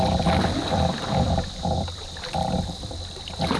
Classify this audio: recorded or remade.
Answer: remade